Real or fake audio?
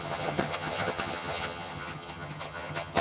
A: fake